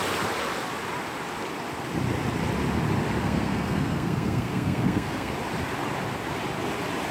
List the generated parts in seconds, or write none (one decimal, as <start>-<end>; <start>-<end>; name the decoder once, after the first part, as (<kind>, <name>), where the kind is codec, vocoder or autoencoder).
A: 3.2-5.3 (codec, SNAC)